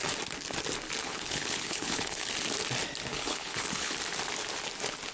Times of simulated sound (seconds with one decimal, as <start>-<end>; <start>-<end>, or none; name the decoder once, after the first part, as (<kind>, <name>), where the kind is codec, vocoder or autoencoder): 1.0-2.2 (codec, HILCodec); 3.1-3.9